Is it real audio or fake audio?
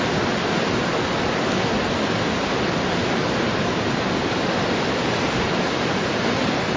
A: real